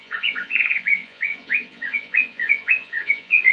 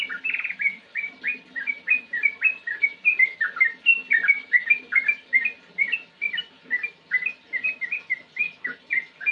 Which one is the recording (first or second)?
second